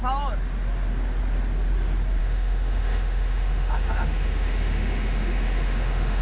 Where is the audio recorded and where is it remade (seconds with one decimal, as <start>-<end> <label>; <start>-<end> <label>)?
0.0-2.2 recorded; 2.2-6.2 remade